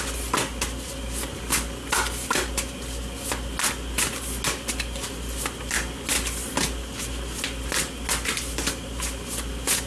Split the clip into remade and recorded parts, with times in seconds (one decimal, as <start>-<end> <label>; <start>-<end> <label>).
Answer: 0.0-9.9 recorded